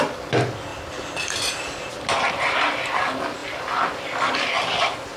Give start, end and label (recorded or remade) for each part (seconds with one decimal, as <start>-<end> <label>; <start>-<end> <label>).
0.0-0.7 recorded; 0.7-1.9 remade; 1.9-3.4 recorded; 3.4-4.4 remade; 4.4-5.2 recorded